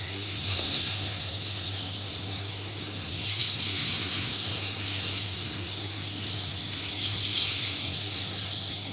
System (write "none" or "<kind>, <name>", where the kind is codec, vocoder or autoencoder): codec, SNAC